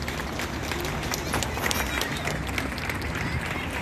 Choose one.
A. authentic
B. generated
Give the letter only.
A